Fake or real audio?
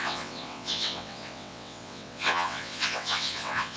fake